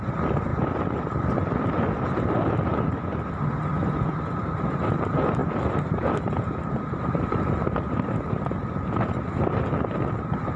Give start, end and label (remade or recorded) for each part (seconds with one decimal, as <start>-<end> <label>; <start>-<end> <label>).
0.0-5.4 recorded; 5.4-9.1 remade; 9.1-10.6 recorded